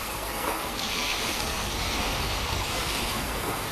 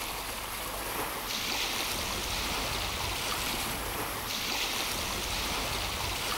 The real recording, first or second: second